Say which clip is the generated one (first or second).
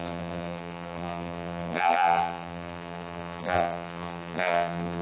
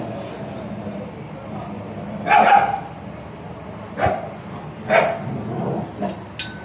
first